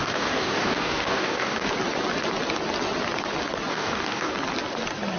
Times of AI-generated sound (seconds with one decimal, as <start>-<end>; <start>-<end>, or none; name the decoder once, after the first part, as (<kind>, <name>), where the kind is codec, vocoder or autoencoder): 0.0-1.7 (codec, DAC); 3.7-4.3